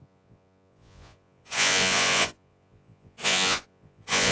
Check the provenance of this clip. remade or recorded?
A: remade